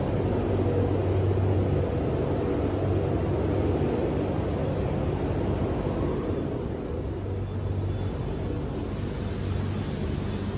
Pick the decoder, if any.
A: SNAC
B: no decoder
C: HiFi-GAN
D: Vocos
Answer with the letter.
B